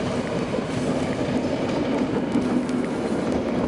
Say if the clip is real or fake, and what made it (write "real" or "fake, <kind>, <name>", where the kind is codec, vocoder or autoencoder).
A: real